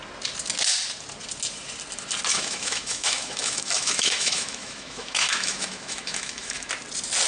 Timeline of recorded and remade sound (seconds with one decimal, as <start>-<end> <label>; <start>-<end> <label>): 0.0-2.3 recorded; 2.3-6.7 remade; 6.7-7.3 recorded